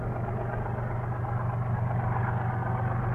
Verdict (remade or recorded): recorded